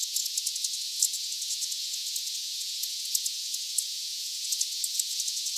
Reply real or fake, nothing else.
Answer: fake